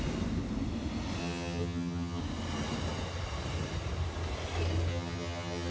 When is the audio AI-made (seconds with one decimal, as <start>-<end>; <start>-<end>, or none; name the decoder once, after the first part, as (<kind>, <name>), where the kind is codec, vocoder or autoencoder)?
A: 1.2-2.2 (vocoder, HiFi-GAN); 4.9-5.7